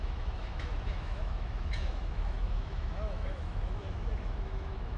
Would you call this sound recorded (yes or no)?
no